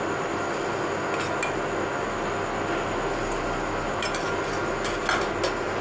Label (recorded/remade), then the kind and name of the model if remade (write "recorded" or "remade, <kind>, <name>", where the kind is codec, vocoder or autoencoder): recorded